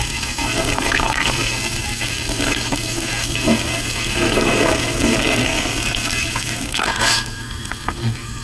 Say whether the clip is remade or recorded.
remade